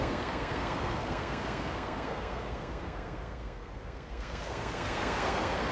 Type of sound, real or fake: fake